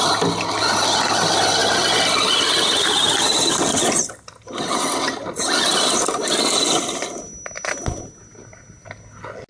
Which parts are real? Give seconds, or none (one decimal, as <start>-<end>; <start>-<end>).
0.0-9.5